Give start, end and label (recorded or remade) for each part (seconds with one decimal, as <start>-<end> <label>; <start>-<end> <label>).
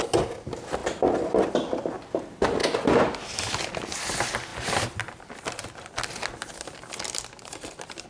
0.0-0.8 recorded; 0.8-1.4 remade; 1.4-8.1 recorded